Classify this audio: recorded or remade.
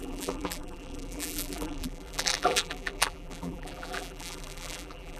remade